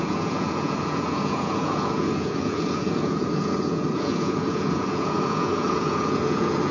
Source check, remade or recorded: remade